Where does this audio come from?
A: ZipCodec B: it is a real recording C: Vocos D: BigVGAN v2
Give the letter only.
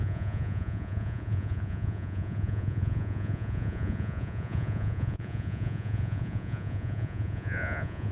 C